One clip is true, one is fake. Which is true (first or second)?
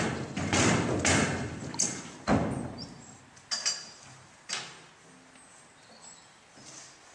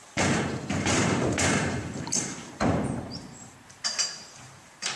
first